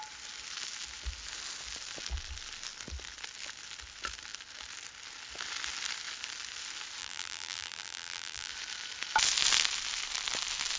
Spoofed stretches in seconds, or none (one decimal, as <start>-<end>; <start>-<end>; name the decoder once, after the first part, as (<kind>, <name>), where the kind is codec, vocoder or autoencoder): 7.0-8.5 (vocoder, BigVGAN v2)